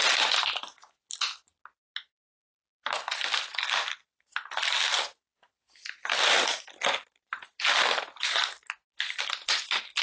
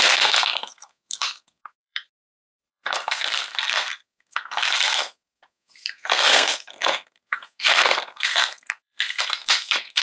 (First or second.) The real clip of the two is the first